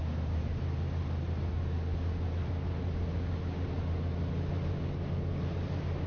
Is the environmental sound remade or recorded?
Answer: recorded